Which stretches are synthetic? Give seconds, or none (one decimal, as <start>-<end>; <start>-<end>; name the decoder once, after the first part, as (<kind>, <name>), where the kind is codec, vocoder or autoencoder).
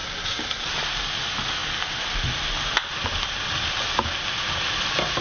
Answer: 0.0-1.0 (vocoder, BigVGAN v2); 1.6-3.8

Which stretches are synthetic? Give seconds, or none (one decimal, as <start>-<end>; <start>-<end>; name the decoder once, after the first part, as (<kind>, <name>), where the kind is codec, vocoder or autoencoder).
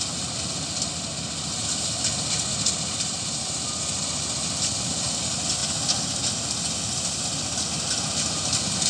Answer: none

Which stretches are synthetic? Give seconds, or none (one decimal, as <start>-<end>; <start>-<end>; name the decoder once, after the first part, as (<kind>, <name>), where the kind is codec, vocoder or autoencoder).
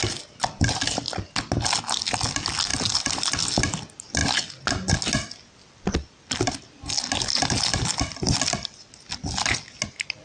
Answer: 2.7-3.3 (vocoder, BigVGAN v2)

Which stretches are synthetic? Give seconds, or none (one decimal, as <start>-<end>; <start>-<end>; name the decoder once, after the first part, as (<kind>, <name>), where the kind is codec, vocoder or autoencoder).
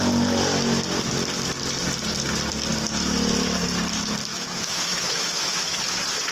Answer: 4.3-5.8 (autoencoder, DAC-VAE)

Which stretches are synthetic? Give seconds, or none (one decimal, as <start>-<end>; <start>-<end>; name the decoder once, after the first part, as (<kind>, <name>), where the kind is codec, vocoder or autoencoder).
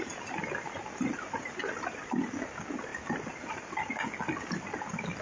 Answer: 1.1-2.0 (vocoder, BigVGAN v2)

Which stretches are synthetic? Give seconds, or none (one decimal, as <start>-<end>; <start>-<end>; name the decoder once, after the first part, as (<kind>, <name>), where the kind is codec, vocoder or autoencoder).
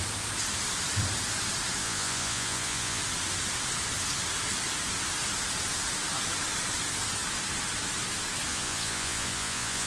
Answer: 1.8-3.0 (vocoder, Vocos); 8.5-9.9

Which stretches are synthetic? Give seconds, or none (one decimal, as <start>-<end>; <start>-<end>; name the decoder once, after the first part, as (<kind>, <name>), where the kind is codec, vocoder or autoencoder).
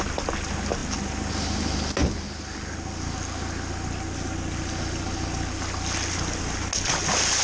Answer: none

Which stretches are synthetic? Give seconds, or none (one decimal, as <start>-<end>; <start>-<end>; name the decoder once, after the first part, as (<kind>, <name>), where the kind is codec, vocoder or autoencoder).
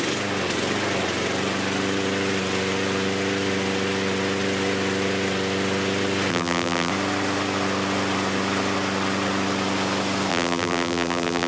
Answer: 6.3-6.9 (vocoder, BigVGAN v2); 10.3-11.5